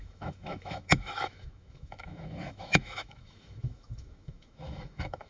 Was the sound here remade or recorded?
remade